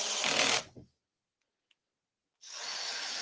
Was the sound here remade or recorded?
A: recorded